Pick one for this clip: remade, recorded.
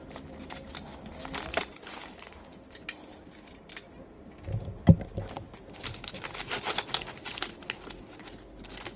recorded